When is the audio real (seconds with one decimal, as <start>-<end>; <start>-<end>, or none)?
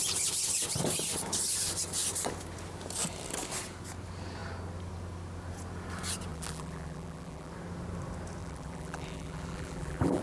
0.0-6.3; 7.5-8.4